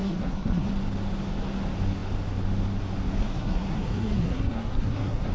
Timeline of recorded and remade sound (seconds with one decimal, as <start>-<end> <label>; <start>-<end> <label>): 0.0-0.7 remade; 0.7-3.2 recorded; 3.2-5.3 remade